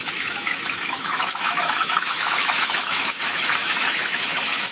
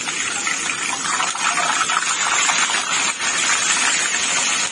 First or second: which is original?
second